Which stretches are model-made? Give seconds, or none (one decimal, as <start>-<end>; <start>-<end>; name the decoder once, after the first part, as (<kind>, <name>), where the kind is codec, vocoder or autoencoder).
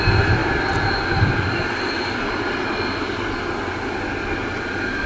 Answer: none